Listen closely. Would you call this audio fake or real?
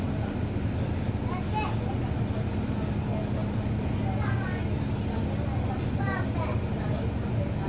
real